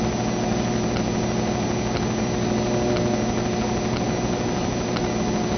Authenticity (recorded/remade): recorded